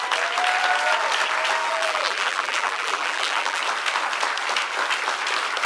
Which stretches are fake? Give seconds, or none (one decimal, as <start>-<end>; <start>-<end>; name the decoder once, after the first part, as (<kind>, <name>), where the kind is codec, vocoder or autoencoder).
1.6-3.6 (vocoder, BigVGAN v2)